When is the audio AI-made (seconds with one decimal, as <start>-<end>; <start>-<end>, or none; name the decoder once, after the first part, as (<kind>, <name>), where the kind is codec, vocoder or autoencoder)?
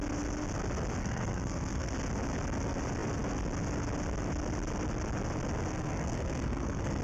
1.0-1.9 (codec, SNAC); 5.7-7.0